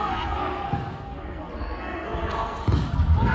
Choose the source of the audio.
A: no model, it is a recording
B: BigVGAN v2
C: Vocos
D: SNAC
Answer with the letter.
D